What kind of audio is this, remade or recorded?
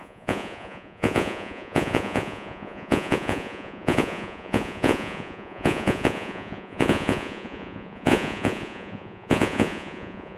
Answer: remade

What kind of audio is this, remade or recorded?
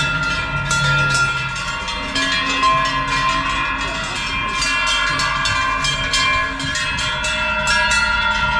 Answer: recorded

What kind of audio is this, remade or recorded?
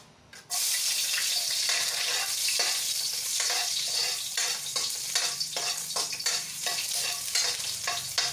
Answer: recorded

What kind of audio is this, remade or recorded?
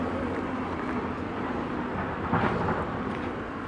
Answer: recorded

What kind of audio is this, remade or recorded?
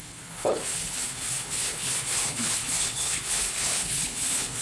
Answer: remade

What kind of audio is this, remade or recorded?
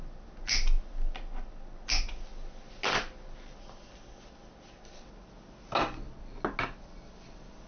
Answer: recorded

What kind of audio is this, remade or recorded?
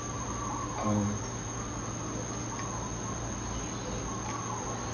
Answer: recorded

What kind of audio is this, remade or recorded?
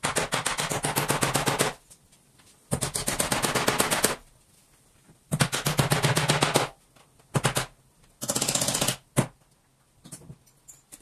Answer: recorded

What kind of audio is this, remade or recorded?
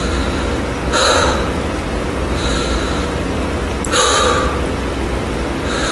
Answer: recorded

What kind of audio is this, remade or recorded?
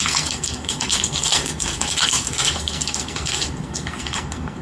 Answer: remade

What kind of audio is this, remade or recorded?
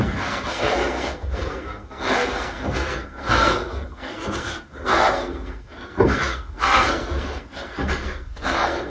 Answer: remade